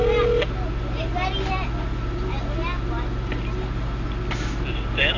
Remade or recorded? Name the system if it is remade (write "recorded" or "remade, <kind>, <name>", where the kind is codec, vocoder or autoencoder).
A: recorded